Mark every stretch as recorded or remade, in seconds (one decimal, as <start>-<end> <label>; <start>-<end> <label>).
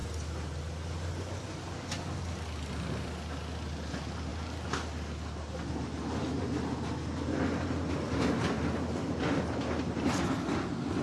0.0-11.0 recorded